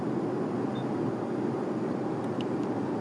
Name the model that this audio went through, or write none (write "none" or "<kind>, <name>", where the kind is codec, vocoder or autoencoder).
none